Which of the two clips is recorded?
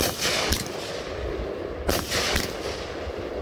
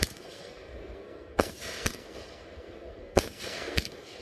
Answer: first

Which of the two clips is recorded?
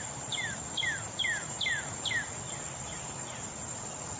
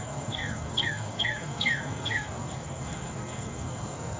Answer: first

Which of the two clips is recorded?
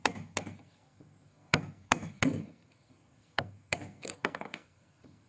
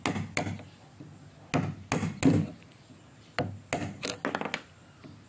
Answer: second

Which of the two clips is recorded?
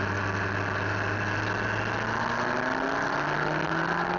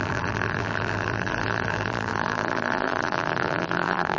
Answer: first